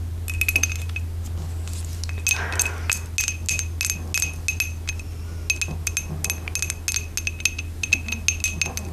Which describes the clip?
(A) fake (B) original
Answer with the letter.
B